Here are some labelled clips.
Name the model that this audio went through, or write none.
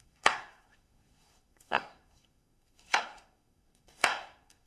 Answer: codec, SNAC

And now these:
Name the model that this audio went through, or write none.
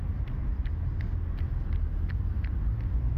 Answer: none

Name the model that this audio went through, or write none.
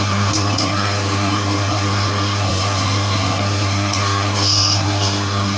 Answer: codec, SNAC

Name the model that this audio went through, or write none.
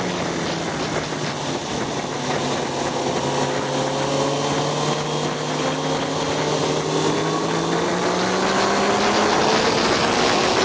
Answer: none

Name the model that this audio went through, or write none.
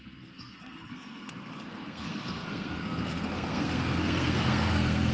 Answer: codec, SNAC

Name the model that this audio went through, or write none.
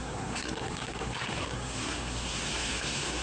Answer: codec, SNAC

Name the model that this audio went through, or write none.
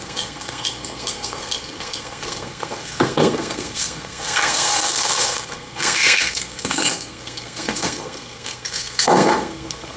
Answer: codec, SNAC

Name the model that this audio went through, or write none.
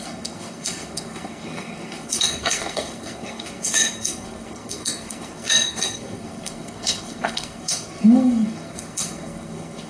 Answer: codec, SNAC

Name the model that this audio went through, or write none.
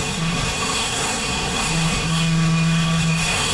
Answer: codec, SNAC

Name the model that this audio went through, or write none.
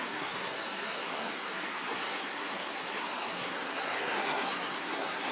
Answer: codec, SNAC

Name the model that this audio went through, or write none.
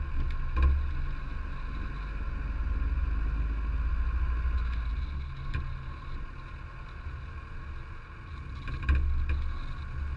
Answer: none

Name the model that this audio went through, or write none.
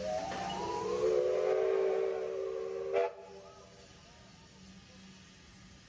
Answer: none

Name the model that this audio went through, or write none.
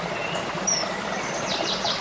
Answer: none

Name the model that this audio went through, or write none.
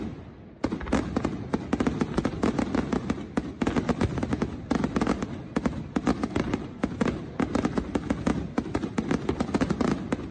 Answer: none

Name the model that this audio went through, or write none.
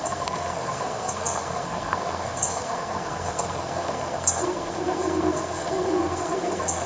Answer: codec, SNAC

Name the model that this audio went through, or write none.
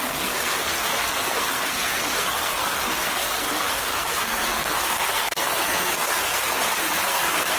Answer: codec, SNAC